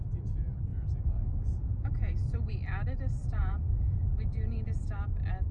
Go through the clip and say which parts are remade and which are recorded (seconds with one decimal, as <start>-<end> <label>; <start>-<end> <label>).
0.0-0.7 recorded; 0.7-2.5 remade; 2.5-3.2 recorded; 3.2-4.8 remade; 4.8-5.5 recorded